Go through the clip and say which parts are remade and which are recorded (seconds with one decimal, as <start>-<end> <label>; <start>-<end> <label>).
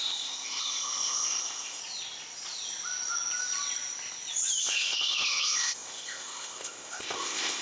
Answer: 0.0-1.8 remade; 1.8-4.6 recorded; 4.6-7.6 remade